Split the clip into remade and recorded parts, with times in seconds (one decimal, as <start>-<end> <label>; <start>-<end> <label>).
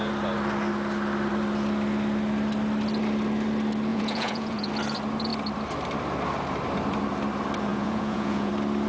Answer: 0.0-3.9 recorded; 3.9-4.7 remade; 4.7-7.7 recorded; 7.7-8.5 remade; 8.5-8.9 recorded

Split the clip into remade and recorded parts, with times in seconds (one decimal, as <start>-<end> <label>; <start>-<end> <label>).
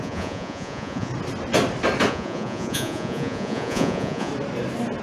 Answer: 0.0-1.1 remade; 1.1-2.1 recorded; 2.1-4.3 remade; 4.3-5.0 recorded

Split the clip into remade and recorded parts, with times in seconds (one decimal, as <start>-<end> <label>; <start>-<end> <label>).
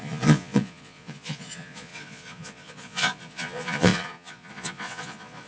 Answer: 0.0-5.5 remade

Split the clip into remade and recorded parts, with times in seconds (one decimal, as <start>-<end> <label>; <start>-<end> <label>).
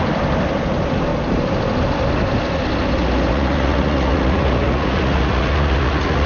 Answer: 0.0-3.3 recorded; 3.3-6.3 remade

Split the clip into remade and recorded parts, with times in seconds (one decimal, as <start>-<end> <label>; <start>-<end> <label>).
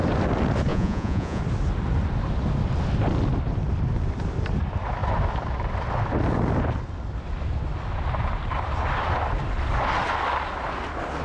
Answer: 0.0-0.7 recorded; 0.7-1.4 remade; 1.4-11.2 recorded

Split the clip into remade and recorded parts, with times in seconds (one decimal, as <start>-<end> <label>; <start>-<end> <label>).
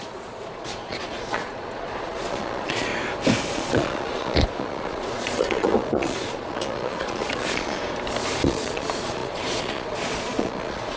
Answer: 0.0-2.9 remade; 2.9-3.5 recorded; 3.5-7.8 remade; 7.8-8.4 recorded; 8.4-11.0 remade